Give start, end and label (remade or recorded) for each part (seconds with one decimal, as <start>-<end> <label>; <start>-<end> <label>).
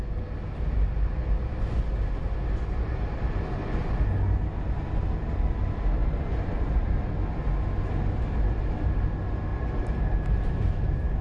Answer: 0.0-6.0 recorded; 6.0-7.1 remade; 7.1-9.5 recorded; 9.5-11.2 remade